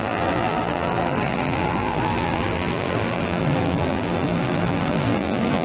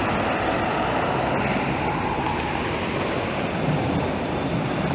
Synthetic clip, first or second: first